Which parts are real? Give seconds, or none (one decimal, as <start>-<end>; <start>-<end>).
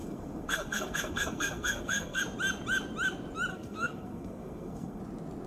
2.2-3.5; 5.0-5.5